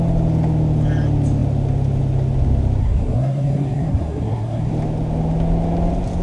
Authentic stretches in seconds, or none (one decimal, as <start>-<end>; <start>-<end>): 0.0-2.8; 4.7-6.2